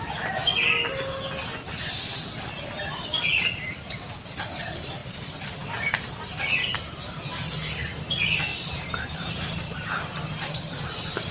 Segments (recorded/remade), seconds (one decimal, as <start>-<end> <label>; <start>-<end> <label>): 0.0-5.0 recorded; 5.0-6.1 remade; 6.1-6.6 recorded; 6.6-7.2 remade; 7.2-8.5 recorded; 8.5-11.3 remade